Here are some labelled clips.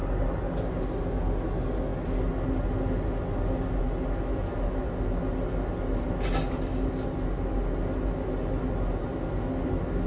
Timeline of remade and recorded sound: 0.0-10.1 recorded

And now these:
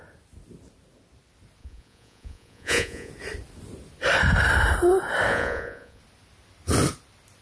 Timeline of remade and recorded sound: 0.0-1.6 recorded; 1.6-3.1 remade; 3.1-5.3 recorded; 5.3-6.0 remade; 6.0-7.4 recorded

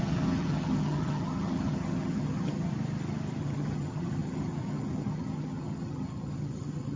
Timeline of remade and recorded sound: 0.0-2.7 remade; 2.7-3.4 recorded; 3.4-7.0 remade